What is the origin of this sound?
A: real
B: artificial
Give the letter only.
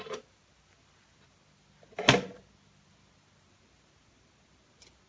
A